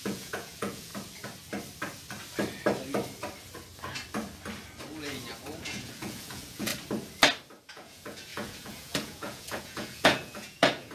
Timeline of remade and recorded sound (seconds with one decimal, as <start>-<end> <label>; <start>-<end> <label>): 0.0-0.9 remade; 0.9-5.6 recorded; 5.6-6.7 remade; 6.7-7.7 recorded; 7.7-10.9 remade